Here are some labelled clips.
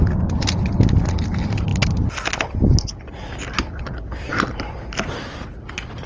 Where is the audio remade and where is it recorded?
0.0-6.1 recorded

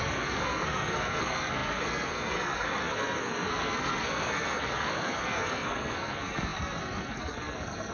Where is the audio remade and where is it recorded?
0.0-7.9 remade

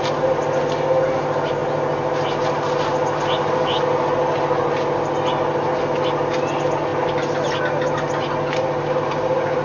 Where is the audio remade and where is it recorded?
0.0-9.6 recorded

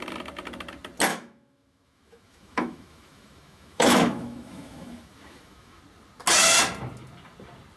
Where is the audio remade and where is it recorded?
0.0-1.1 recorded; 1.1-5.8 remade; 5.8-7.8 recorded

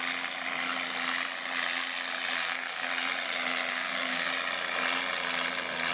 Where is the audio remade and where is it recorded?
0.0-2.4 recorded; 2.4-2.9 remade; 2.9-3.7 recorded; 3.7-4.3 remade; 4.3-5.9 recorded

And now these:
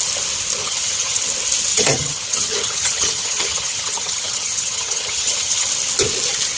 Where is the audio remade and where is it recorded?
0.0-0.6 recorded; 0.6-1.2 remade; 1.2-1.7 recorded; 1.7-5.7 remade; 5.7-6.6 recorded

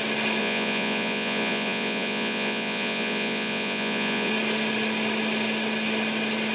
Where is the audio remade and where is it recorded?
0.0-0.4 recorded; 0.4-4.3 remade; 4.3-6.5 recorded

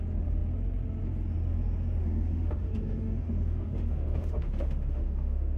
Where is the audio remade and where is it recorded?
0.0-2.0 recorded; 2.0-5.6 remade